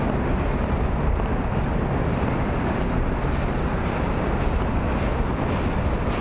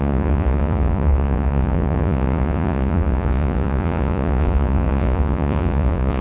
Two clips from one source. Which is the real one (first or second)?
first